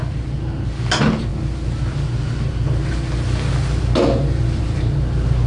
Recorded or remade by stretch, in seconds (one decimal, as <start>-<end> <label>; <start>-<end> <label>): 0.0-5.5 recorded